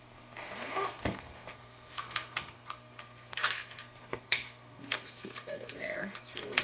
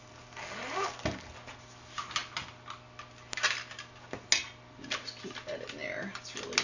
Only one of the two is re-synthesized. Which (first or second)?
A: first